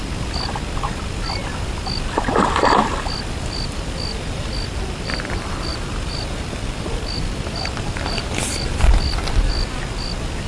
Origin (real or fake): real